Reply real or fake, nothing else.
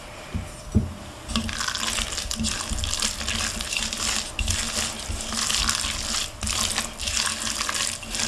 real